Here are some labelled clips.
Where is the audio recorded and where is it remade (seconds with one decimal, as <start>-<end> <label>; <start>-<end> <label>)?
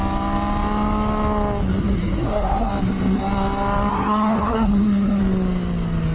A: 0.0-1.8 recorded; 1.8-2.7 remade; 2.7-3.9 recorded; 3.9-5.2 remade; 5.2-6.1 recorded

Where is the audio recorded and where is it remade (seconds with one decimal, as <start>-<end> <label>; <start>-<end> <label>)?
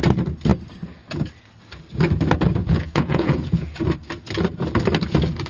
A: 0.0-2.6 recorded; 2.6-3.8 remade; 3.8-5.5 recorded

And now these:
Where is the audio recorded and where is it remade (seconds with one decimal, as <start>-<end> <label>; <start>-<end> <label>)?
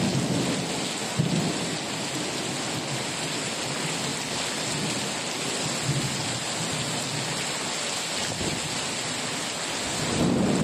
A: 0.0-10.6 recorded